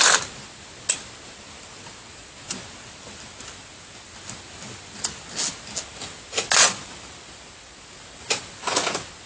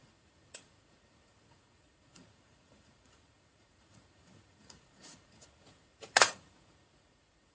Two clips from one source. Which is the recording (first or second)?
first